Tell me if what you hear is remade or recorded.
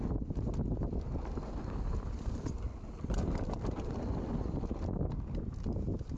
recorded